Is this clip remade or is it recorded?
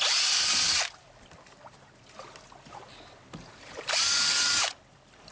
recorded